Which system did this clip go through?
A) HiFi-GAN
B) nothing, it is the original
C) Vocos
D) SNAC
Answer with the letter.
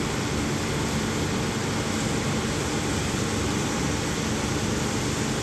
B